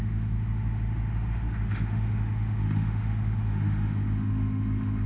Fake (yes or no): yes